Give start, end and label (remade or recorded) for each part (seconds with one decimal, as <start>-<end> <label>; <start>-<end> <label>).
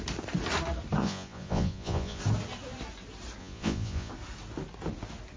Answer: 0.0-1.0 recorded; 1.0-2.2 remade; 2.2-3.4 recorded; 3.4-4.1 remade; 4.1-5.4 recorded